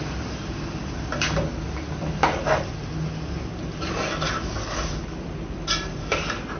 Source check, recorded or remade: recorded